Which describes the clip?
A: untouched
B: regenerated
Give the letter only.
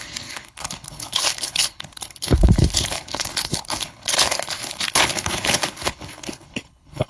B